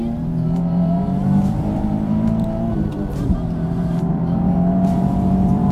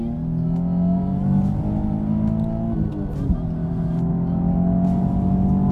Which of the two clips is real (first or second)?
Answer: second